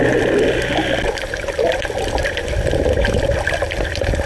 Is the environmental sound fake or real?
fake